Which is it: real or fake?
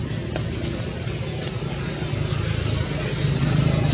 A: real